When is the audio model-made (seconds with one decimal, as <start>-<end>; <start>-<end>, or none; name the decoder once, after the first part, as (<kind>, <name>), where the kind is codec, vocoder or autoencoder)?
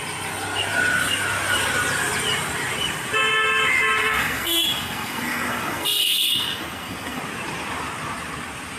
4.0-7.2 (codec, SNAC)